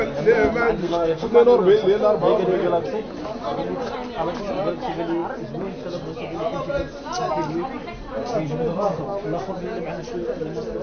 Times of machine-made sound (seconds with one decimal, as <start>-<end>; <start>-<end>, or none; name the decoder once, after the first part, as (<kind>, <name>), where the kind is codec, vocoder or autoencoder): 0.8-1.3 (codec, SNAC)